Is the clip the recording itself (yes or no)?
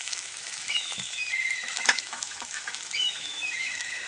no